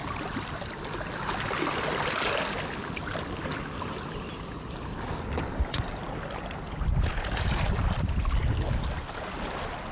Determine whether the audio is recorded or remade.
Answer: recorded